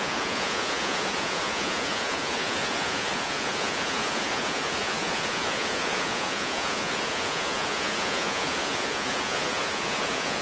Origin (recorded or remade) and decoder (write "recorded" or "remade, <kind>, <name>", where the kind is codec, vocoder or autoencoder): remade, vocoder, Vocos